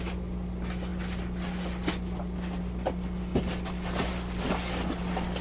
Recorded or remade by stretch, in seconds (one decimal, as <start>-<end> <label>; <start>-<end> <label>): 0.0-0.9 recorded; 0.9-2.6 remade; 2.6-4.1 recorded; 4.1-5.0 remade; 5.0-5.4 recorded